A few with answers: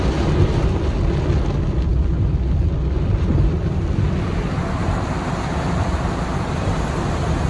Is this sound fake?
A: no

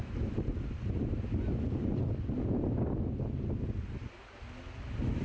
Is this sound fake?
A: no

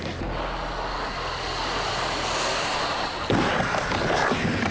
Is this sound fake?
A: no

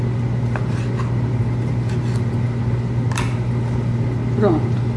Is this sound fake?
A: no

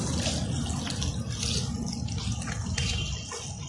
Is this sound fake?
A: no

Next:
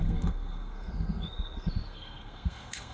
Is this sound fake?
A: yes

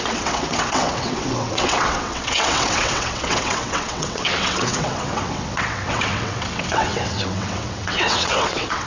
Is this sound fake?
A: yes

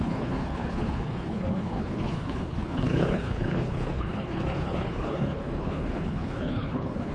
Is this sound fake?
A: yes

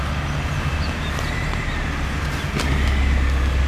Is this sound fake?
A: no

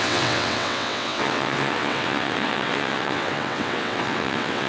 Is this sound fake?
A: yes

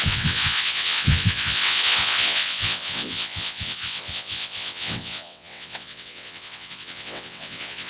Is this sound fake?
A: yes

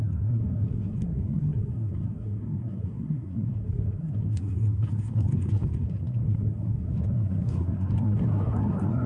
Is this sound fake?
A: yes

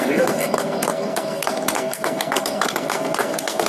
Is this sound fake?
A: yes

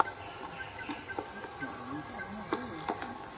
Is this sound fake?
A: no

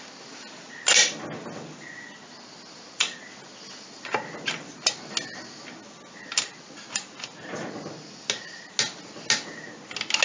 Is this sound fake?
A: no